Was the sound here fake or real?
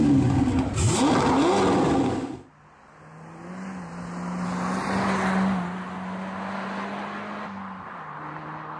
real